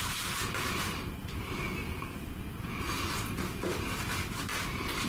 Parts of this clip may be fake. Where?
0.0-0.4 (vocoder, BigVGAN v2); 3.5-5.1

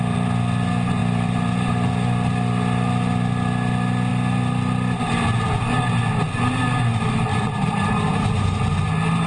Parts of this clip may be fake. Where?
1.0-1.9 (vocoder, BigVGAN v2); 7.3-8.7

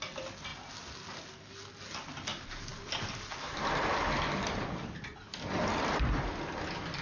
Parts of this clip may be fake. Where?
0.5-1.5 (vocoder, BigVGAN v2); 2.7-6.3

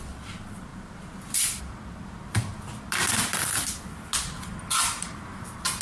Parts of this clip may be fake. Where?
0.7-1.6 (vocoder, BigVGAN v2)

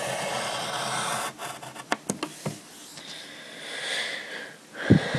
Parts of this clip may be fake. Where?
none